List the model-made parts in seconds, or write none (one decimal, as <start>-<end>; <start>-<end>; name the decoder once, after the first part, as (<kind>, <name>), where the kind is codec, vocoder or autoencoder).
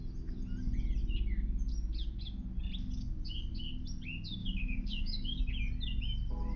4.4-5.4 (codec, DAC)